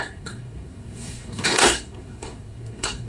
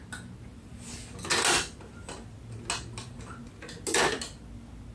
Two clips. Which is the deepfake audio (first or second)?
first